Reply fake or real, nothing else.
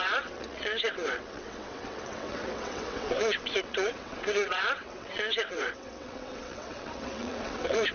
fake